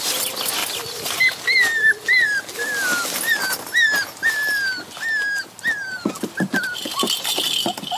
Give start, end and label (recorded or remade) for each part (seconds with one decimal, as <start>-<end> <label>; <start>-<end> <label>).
0.0-8.0 recorded

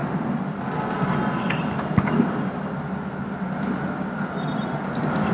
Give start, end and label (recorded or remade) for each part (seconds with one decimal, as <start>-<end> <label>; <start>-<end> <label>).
0.0-5.3 recorded

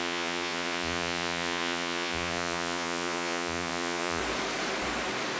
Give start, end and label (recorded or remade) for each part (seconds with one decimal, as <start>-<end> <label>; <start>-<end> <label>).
0.0-4.2 remade; 4.2-5.4 recorded

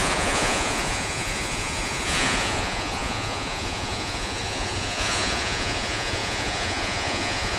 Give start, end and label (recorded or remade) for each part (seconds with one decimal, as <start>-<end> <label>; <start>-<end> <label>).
0.0-7.6 remade

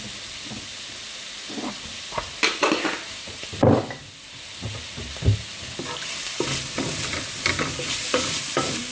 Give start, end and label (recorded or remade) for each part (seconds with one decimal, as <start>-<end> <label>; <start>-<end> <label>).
0.0-8.9 recorded